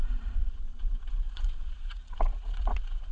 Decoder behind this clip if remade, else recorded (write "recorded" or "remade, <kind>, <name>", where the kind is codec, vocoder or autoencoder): remade, vocoder, Vocos